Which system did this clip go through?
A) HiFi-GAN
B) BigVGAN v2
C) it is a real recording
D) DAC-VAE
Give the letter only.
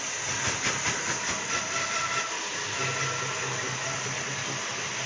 C